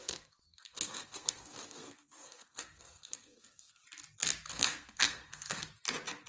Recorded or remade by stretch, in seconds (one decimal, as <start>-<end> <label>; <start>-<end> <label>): 0.0-3.8 remade; 3.8-4.5 recorded; 4.5-5.6 remade; 5.6-6.3 recorded